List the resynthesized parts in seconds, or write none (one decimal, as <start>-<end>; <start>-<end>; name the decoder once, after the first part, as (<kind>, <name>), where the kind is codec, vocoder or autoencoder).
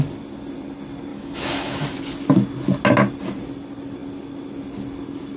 1.1-1.8 (autoencoder, DAC-VAE)